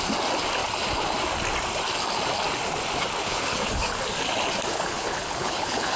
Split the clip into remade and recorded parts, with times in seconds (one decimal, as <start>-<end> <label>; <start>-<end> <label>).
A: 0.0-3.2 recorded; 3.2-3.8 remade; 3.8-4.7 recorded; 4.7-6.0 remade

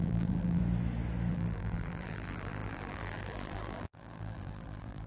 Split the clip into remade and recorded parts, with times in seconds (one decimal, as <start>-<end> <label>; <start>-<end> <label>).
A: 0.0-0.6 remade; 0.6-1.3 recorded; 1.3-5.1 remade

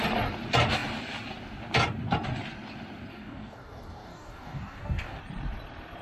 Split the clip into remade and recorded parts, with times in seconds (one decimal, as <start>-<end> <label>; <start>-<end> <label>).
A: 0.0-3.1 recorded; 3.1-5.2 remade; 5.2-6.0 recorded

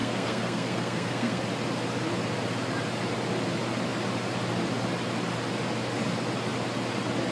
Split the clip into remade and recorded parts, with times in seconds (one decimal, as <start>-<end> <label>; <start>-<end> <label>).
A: 0.0-1.4 remade; 1.4-7.3 recorded

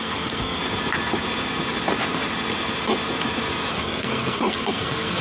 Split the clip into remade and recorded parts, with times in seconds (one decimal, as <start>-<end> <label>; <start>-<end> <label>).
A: 0.0-0.6 remade; 0.6-3.7 recorded; 3.7-5.2 remade

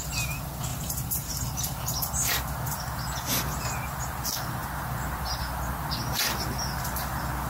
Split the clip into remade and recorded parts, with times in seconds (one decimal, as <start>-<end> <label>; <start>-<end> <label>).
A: 0.0-0.7 recorded; 0.7-2.4 remade; 2.4-7.5 recorded

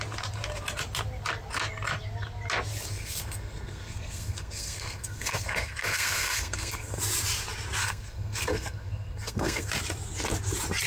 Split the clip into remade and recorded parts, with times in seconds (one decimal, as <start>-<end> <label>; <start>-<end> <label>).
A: 0.0-2.9 recorded; 2.9-7.0 remade; 7.0-7.8 recorded; 7.8-9.7 remade; 9.7-10.9 recorded

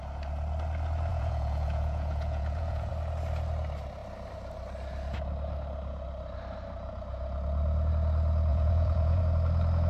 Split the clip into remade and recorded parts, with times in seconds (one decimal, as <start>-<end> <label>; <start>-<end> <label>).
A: 0.0-1.1 recorded; 1.1-2.9 remade; 2.9-8.5 recorded; 8.5-9.2 remade; 9.2-9.9 recorded